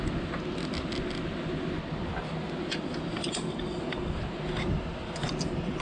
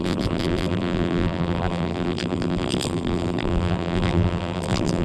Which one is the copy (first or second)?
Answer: second